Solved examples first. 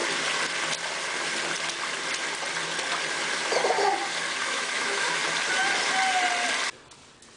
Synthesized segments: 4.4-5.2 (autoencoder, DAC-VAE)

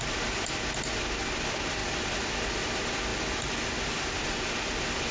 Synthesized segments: none

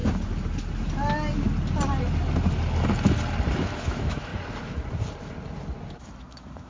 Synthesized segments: 3.6-4.3 (autoencoder, DAC-VAE); 6.0-6.7

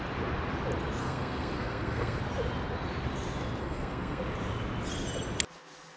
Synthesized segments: 1.0-2.2 (codec, SNAC); 3.6-4.2

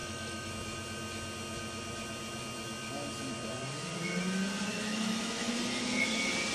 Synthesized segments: 0.0-0.5 (autoencoder, DAC-VAE); 4.7-5.5

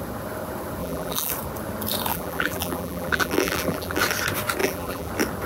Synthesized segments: 0.8-1.3 (vocoder, BigVGAN v2); 2.1-4.0; 4.6-5.1

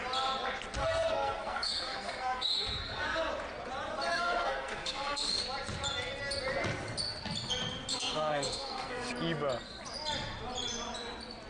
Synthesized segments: 0.8-3.3 (codec, SNAC); 4.1-5.4; 7.9-9.1

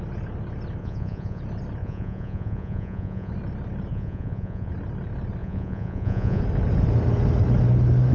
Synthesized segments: 0.8-1.4 (vocoder, Vocos); 1.8-3.3; 3.9-4.7; 5.4-6.4